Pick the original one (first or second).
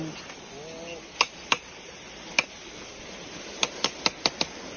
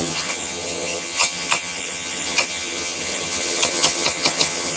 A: first